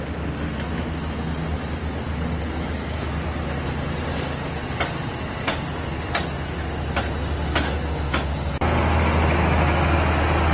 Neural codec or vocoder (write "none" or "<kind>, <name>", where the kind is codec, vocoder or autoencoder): none